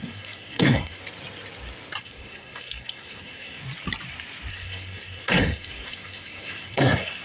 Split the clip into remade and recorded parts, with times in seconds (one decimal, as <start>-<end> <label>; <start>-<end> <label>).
0.0-1.0 remade; 1.0-2.0 recorded; 2.0-3.6 remade; 3.6-4.5 recorded; 4.5-7.2 remade